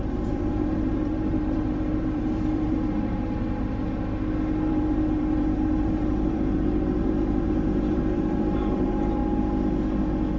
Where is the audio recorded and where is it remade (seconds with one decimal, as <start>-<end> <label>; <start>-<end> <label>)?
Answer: 0.0-3.8 remade; 3.8-4.7 recorded; 4.7-9.2 remade; 9.2-10.4 recorded